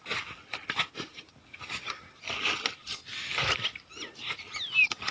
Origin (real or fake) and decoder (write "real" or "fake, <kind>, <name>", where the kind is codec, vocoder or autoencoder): real